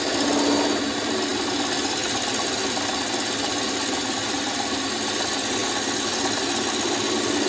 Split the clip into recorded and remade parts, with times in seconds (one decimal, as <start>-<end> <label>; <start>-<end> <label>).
0.0-7.5 recorded